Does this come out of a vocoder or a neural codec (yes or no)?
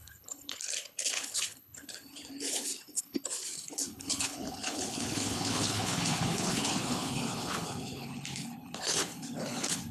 yes